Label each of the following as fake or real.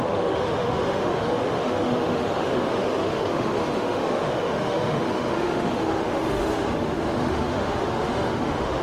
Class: fake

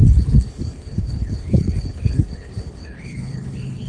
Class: fake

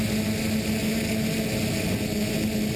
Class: real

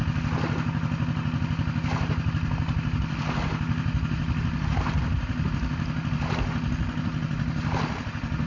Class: real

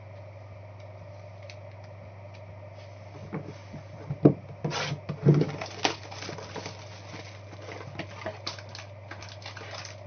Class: real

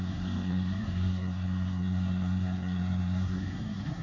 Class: fake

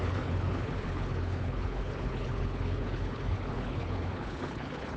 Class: fake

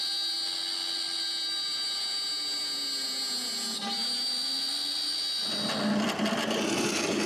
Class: real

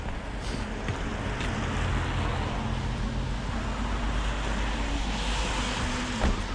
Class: real